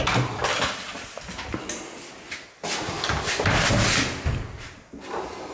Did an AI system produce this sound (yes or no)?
no